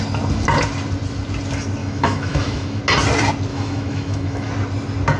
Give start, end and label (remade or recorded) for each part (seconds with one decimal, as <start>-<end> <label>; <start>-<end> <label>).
0.0-1.8 recorded; 1.8-2.8 remade; 2.8-3.5 recorded; 3.5-4.5 remade; 4.5-5.2 recorded